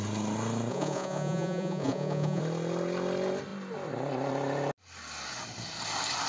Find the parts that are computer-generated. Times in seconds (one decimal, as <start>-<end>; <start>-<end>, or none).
0.7-2.4